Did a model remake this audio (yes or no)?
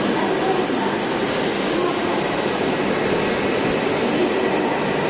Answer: no